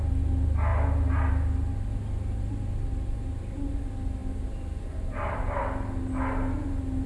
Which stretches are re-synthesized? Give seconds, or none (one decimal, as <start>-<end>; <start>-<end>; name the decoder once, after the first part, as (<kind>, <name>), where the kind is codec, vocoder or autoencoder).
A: none